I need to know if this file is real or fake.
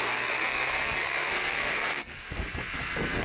fake